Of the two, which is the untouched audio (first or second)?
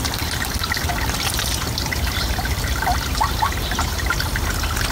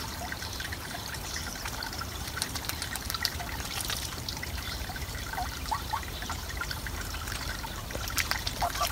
first